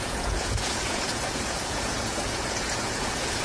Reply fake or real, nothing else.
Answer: fake